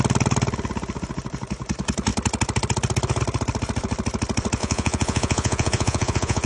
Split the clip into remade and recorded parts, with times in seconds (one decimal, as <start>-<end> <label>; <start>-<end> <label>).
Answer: 0.0-4.6 recorded; 4.6-6.5 remade